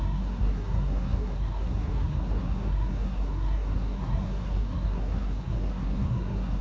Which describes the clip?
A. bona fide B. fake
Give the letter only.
B